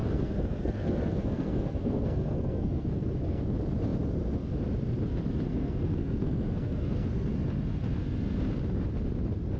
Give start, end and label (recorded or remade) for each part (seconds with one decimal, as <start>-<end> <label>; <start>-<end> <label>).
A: 0.0-3.4 remade; 3.4-5.5 recorded; 5.5-7.3 remade; 7.3-9.6 recorded